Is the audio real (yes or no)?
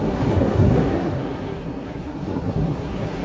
no